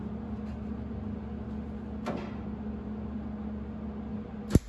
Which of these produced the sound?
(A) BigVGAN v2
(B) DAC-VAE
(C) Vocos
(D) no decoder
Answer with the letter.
D